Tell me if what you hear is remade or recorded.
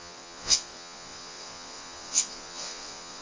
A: remade